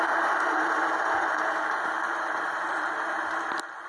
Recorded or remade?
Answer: recorded